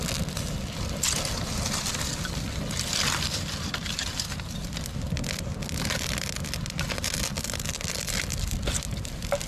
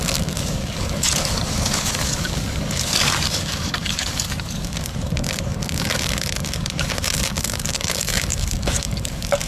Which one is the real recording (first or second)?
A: first